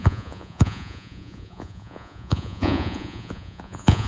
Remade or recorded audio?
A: remade